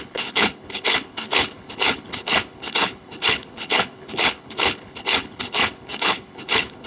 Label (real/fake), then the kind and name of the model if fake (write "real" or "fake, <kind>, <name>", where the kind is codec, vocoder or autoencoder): fake, codec, HILCodec